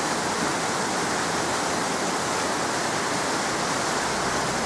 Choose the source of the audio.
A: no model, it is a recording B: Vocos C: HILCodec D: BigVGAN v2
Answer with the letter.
A